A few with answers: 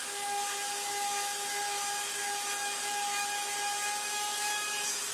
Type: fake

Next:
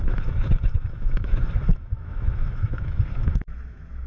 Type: fake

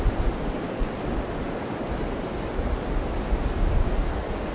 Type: real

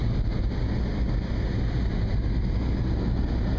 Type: real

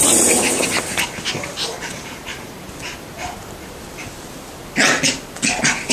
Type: real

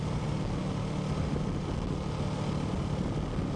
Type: real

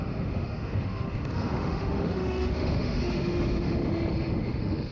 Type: fake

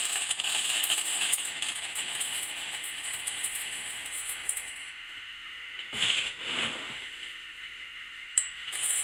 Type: fake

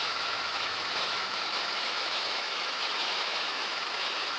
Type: fake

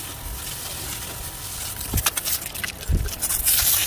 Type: real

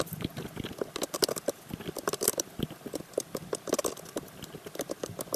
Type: real